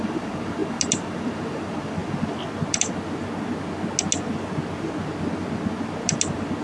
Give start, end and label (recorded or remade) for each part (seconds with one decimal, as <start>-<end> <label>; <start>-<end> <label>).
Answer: 0.0-6.6 recorded